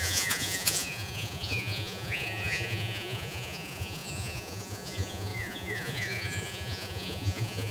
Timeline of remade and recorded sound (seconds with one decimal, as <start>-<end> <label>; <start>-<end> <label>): 0.0-7.7 remade